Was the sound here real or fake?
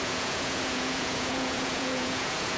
fake